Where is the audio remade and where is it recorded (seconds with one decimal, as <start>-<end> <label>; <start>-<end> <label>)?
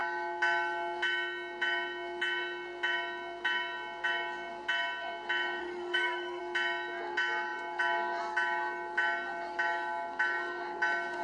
0.0-5.6 recorded; 5.6-6.4 remade; 6.4-11.2 recorded